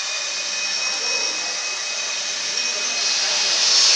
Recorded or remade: recorded